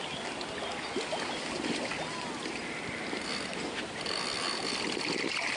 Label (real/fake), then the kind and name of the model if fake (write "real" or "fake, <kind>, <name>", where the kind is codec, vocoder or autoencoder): real